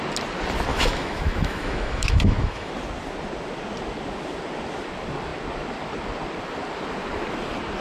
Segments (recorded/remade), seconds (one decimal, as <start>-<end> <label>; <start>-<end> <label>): 0.0-0.7 recorded; 0.7-2.7 remade; 2.7-7.8 recorded